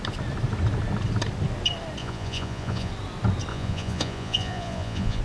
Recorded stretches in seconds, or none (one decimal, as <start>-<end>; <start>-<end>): 0.0-2.0; 2.9-3.5